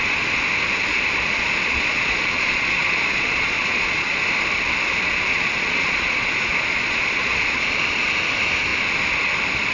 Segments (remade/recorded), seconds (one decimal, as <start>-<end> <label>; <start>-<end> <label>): 0.0-0.9 recorded; 0.9-4.2 remade; 4.2-5.3 recorded; 5.3-7.8 remade; 7.8-9.7 recorded